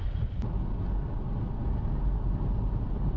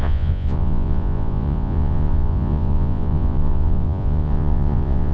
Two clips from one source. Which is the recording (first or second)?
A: first